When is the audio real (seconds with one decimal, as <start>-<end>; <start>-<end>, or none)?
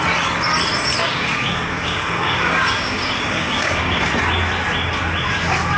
0.0-1.0; 4.1-5.8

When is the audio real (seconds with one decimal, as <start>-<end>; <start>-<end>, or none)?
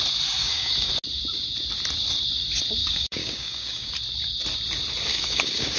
0.0-0.4; 0.9-2.8; 3.9-5.1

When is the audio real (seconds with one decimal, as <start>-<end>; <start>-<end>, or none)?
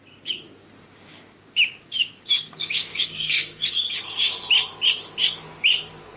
0.0-0.6; 4.3-6.2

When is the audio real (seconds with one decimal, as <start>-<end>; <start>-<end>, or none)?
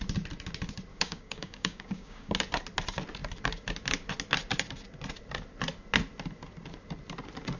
0.0-0.9; 2.3-7.6